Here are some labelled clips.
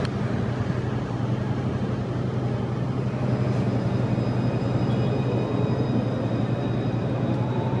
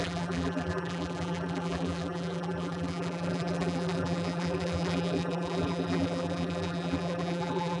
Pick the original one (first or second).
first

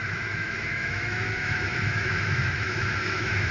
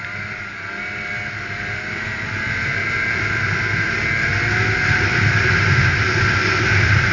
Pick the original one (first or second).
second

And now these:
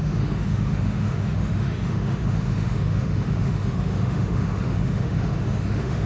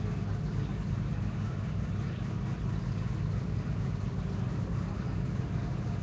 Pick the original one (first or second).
second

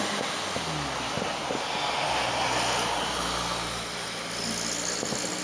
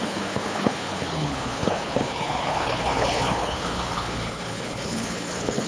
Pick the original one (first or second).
first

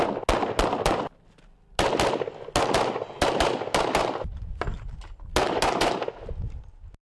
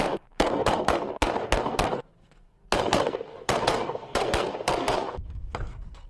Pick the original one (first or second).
first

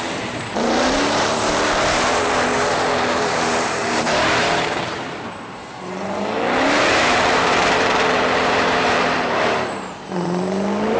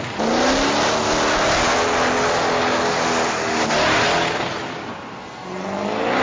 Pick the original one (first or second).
second